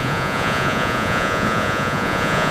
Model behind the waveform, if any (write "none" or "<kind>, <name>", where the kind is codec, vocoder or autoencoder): vocoder, Vocos